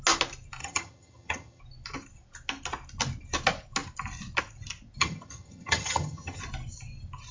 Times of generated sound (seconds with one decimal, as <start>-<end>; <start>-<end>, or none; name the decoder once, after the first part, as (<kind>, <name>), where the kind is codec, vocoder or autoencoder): 0.6-1.6 (vocoder, HiFi-GAN); 5.0-6.4